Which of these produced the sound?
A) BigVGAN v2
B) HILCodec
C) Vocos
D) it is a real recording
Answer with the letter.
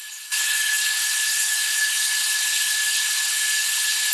B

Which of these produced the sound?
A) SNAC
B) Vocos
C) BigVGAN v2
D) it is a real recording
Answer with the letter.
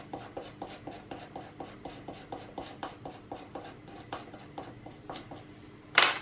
C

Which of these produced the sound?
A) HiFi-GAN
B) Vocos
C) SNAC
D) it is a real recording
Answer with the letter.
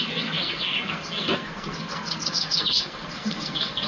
C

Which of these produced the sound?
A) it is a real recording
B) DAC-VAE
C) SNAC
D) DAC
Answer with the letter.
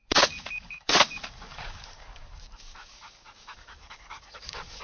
D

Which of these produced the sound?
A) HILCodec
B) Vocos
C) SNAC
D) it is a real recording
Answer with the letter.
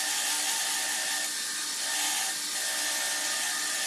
D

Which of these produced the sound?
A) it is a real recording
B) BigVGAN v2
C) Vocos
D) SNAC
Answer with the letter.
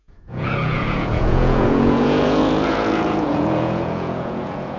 C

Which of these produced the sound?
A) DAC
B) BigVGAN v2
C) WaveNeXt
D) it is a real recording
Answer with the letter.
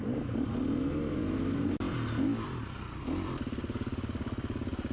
D